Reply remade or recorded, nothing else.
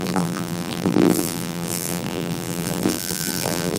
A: remade